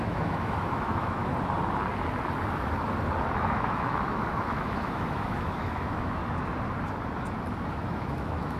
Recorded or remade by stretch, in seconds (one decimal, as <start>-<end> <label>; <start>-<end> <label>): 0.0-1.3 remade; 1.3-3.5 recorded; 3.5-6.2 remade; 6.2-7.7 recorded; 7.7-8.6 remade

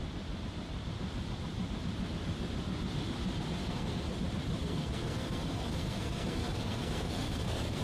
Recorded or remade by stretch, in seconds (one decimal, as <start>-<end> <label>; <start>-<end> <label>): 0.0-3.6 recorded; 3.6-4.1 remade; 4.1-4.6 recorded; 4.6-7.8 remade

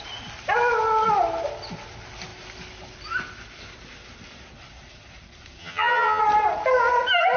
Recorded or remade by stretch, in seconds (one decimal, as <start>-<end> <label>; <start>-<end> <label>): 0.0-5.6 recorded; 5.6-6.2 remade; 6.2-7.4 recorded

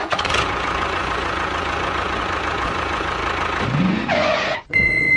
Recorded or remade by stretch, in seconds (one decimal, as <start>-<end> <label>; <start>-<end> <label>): 0.0-3.2 remade; 3.2-3.8 recorded; 3.8-5.2 remade

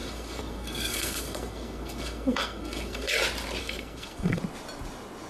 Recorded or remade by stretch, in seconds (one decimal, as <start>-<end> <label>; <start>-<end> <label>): 0.0-3.2 remade; 3.2-3.6 recorded; 3.6-4.4 remade; 4.4-5.3 recorded

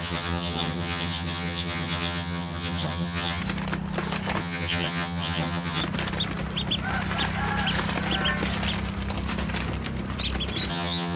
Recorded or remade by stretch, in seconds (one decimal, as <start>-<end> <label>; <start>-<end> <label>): 0.0-3.4 remade; 3.4-4.4 recorded; 4.4-5.8 remade; 5.8-10.7 recorded; 10.7-11.2 remade

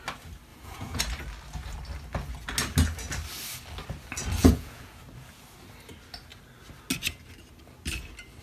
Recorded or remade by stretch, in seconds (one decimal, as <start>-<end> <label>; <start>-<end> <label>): 0.0-0.5 recorded; 0.5-1.0 remade; 1.0-4.4 recorded; 4.4-5.0 remade; 5.0-8.4 recorded